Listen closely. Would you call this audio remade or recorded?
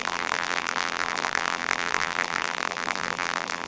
remade